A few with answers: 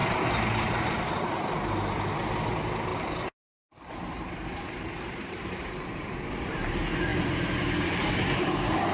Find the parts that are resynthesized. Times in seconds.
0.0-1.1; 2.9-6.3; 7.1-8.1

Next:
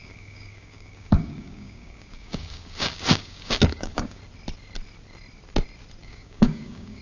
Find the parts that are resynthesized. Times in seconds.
0.0-4.2; 6.0-7.0

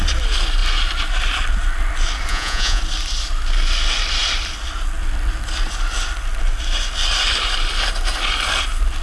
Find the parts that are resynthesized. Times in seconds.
2.3-2.8

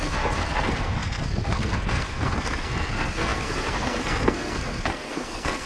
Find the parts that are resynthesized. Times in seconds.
0.0-5.7